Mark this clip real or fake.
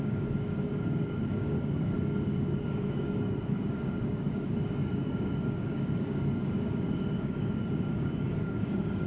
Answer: fake